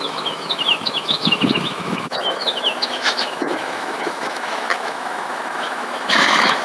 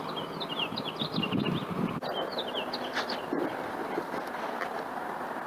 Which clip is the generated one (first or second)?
first